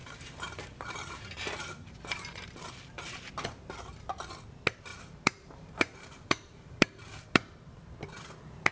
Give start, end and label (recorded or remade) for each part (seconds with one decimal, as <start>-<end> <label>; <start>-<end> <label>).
0.0-3.3 remade; 3.3-4.9 recorded; 4.9-7.8 remade; 7.8-8.7 recorded